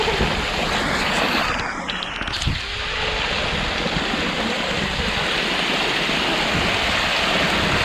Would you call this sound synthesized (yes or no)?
no